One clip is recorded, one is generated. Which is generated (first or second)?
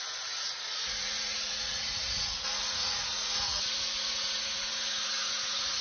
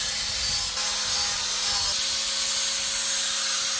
first